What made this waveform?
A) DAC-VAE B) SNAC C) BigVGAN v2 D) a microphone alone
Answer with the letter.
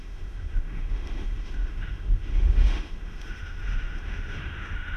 A